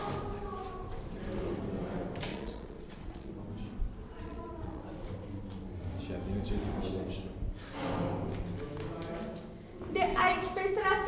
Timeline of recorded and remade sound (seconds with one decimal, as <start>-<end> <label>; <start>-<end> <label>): 0.0-2.3 recorded; 2.3-3.3 remade; 3.3-4.0 recorded; 4.0-4.8 remade; 4.8-11.1 recorded